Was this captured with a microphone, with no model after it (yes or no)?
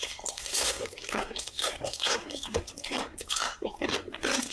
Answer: no